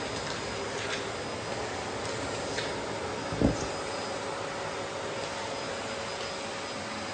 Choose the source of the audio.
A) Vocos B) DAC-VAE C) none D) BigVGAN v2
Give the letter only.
C